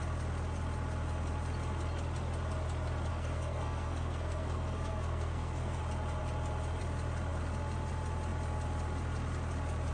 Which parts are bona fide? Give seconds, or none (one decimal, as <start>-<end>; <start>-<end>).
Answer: 0.0-3.1; 5.8-9.9

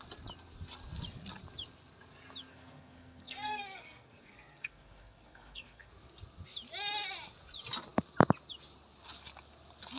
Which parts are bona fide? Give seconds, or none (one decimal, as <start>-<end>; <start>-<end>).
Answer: 0.0-2.5; 5.9-10.0